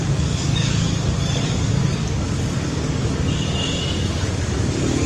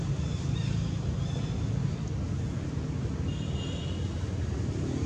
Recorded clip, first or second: second